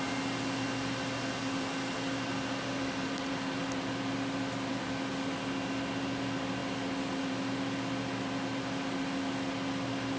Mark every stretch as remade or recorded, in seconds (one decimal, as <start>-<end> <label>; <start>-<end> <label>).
0.0-10.2 recorded